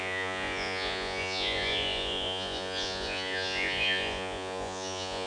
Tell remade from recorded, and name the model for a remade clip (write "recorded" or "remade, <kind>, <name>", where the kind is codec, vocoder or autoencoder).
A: remade, vocoder, Vocos